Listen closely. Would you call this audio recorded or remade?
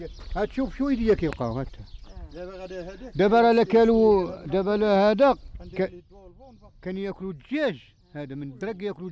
recorded